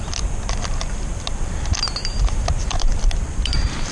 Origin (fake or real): fake